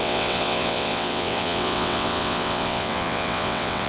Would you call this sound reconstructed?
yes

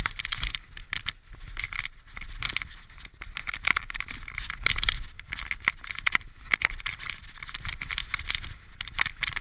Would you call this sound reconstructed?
no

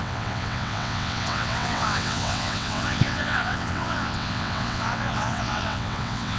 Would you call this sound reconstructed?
yes